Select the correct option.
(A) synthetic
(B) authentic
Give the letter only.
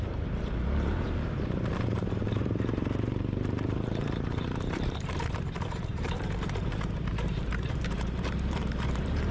A